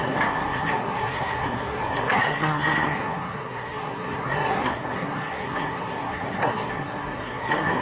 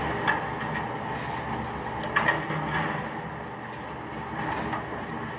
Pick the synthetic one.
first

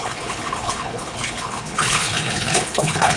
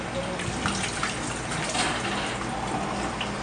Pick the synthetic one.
first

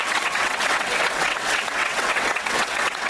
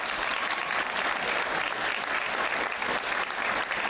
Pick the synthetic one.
first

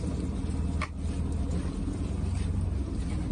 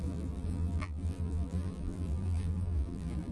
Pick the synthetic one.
second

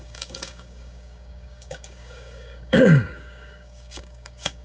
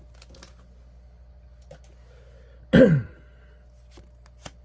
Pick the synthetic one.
first